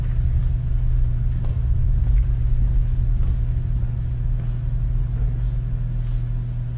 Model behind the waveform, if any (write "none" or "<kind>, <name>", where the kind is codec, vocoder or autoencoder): none